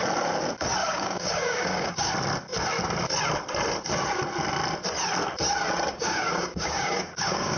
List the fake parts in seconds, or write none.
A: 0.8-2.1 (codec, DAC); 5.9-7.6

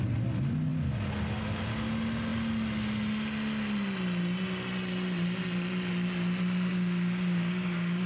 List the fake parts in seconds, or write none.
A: 6.7-8.1 (codec, DAC)